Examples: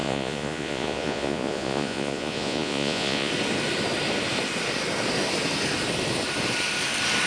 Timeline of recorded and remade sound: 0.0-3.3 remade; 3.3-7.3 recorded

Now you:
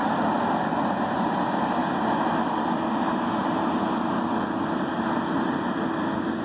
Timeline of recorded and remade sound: 0.0-6.4 recorded

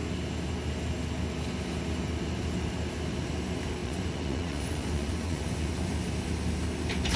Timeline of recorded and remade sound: 0.0-3.8 recorded; 3.8-5.9 remade; 5.9-7.2 recorded

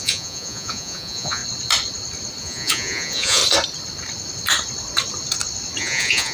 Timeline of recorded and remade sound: 0.0-1.4 remade; 1.4-2.4 recorded; 2.4-3.4 remade; 3.4-5.8 recorded; 5.8-6.3 remade